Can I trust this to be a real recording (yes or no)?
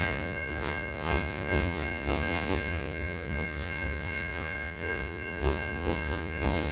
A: no